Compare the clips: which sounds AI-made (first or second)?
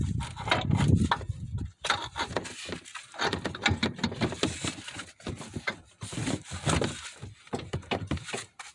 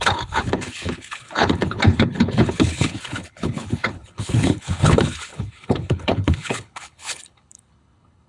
second